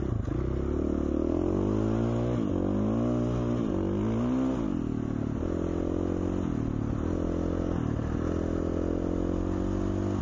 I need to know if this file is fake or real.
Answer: real